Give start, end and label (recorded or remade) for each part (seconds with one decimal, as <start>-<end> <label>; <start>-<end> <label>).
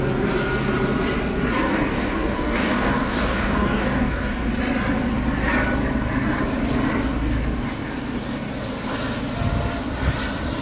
0.0-1.7 recorded; 1.7-4.5 remade; 4.5-10.6 recorded